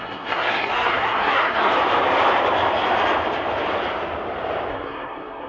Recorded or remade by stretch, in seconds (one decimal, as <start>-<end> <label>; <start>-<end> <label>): 0.0-1.7 remade; 1.7-4.7 recorded; 4.7-5.5 remade